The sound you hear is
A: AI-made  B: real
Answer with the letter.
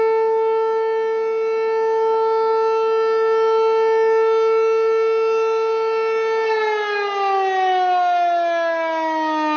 B